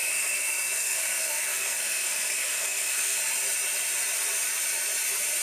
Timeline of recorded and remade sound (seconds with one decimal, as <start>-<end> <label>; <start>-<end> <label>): 0.0-3.2 remade; 3.2-5.4 recorded